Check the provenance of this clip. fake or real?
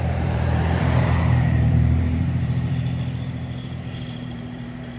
fake